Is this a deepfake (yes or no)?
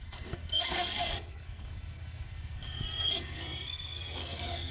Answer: yes